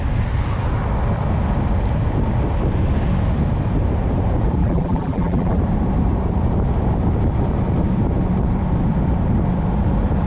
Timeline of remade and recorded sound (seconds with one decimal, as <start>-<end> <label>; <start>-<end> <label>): 0.0-4.6 recorded; 4.6-5.6 remade; 5.6-10.3 recorded